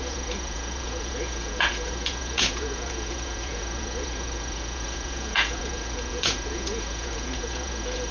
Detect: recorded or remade remade